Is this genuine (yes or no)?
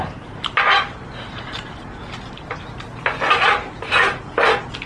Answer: yes